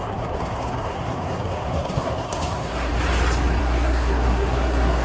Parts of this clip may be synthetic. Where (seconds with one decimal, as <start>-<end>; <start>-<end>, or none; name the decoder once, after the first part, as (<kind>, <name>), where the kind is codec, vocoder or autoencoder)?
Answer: 0.0-2.9 (codec, SNAC); 3.6-5.0